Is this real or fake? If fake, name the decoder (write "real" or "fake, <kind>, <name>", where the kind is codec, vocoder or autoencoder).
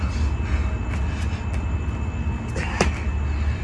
real